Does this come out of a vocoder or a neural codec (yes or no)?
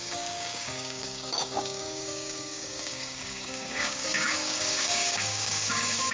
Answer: yes